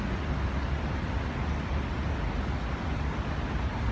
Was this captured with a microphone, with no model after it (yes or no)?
yes